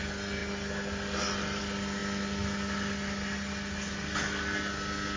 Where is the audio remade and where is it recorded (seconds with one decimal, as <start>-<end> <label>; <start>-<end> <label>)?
0.0-5.2 recorded